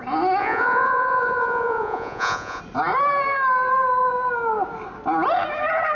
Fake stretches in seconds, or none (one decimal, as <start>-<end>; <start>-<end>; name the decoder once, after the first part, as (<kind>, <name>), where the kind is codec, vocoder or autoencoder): 0.4-2.6 (vocoder, Vocos)